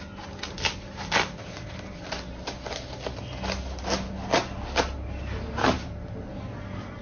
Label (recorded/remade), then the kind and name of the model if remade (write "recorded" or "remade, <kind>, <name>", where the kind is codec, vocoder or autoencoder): recorded